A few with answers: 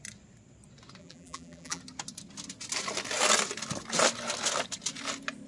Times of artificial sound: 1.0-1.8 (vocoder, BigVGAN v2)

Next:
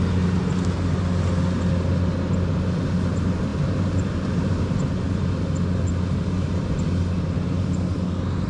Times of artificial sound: 3.5-4.9 (vocoder, BigVGAN v2); 5.9-6.8

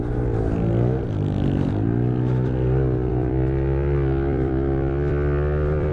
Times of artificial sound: 3.1-5.9 (vocoder, BigVGAN v2)

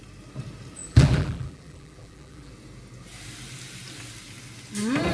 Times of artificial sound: 0.8-2.5 (vocoder, BigVGAN v2)

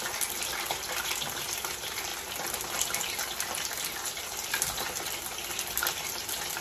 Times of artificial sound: none

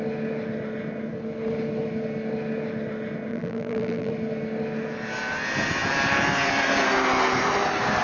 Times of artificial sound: 3.3-4.1 (vocoder, BigVGAN v2)

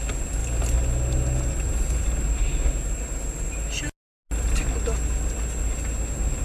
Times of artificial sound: none